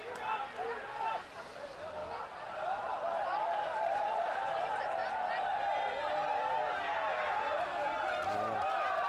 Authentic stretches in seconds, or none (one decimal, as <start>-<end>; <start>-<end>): 0.0-9.1